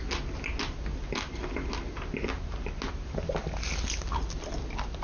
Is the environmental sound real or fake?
real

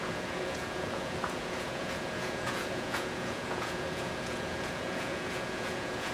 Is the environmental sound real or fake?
fake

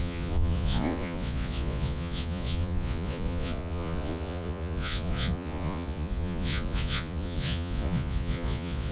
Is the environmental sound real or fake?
fake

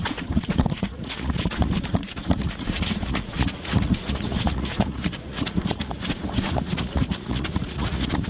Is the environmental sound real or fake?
fake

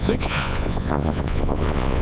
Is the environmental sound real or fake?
fake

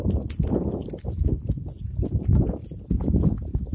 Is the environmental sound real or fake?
real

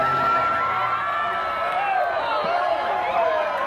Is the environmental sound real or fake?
real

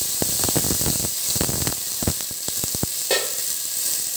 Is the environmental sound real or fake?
real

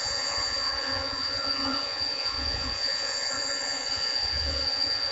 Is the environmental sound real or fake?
fake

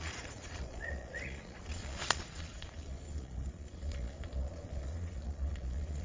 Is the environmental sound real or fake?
fake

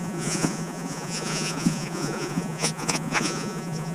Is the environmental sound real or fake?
fake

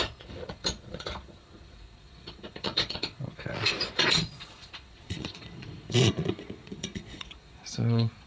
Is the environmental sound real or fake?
fake